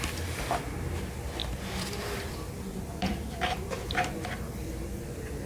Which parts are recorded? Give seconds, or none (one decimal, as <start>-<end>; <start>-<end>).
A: 0.0-1.4; 4.7-5.5

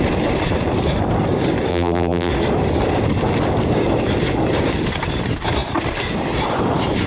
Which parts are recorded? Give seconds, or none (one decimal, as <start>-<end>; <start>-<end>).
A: 0.0-1.7; 2.3-7.1